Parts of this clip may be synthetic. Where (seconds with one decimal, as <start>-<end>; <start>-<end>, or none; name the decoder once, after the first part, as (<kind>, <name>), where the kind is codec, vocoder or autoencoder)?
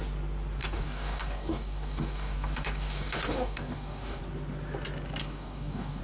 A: 0.6-4.2 (codec, DAC); 5.2-6.0